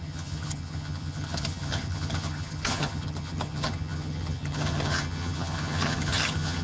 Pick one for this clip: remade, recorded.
remade